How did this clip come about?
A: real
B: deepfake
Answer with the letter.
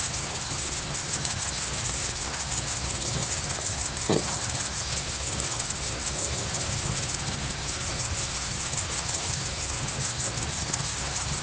B